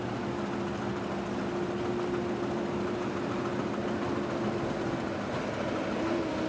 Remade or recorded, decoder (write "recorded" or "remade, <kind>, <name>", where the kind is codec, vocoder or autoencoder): recorded